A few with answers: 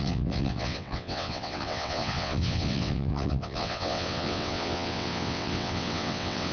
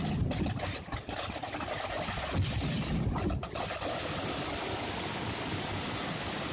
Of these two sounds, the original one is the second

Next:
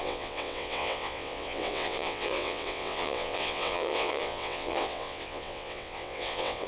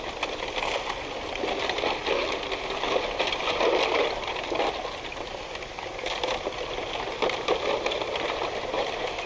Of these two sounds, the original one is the second